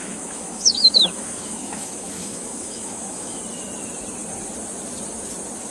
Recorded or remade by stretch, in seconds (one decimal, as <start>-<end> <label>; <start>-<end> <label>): 0.0-3.4 remade; 3.4-5.7 recorded